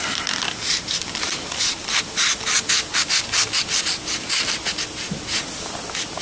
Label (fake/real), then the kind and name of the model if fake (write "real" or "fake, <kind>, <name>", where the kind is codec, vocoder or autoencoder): real